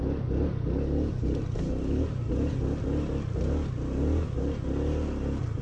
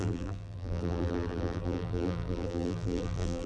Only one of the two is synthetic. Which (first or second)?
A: second